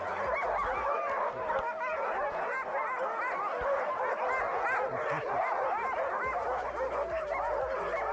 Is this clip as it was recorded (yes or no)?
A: yes